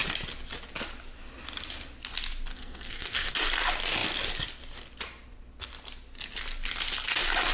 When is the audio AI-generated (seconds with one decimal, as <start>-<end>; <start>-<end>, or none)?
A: 2.5-3.3